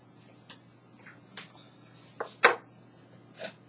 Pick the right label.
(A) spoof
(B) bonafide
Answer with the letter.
B